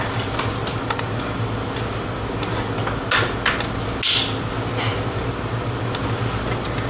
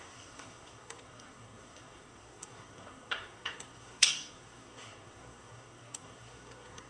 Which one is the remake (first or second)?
second